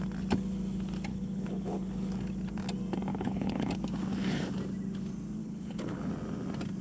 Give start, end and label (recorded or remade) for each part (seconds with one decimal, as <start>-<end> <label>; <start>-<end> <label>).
0.0-1.1 recorded; 1.1-2.1 remade; 2.1-3.1 recorded; 3.1-3.7 remade; 3.7-5.4 recorded; 5.4-6.1 remade; 6.1-6.8 recorded